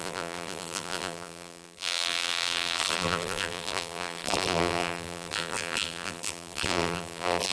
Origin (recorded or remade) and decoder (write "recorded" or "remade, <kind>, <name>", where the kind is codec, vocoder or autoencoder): remade, vocoder, BigVGAN v2